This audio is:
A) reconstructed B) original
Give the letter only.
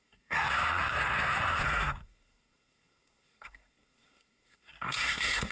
A